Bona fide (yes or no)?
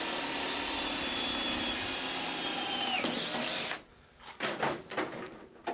yes